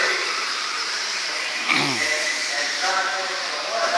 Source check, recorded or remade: remade